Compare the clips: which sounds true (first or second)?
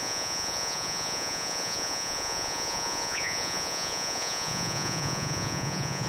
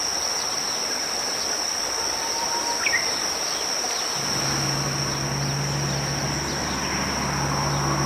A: second